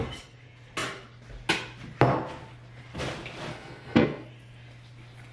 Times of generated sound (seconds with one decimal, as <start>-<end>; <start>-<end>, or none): 3.5-4.3